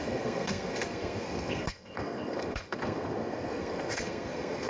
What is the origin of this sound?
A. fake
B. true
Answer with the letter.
A